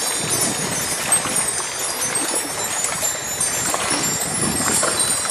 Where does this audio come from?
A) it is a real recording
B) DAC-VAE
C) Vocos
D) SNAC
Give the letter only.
A